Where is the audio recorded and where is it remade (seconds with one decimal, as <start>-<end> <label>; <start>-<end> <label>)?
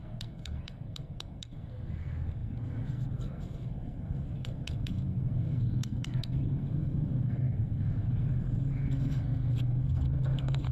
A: 0.0-10.7 remade